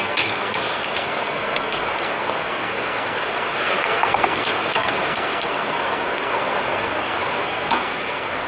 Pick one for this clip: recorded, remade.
remade